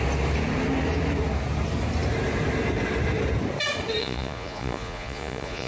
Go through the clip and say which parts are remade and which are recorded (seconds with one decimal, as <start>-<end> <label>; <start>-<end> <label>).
0.0-4.0 recorded; 4.0-5.7 remade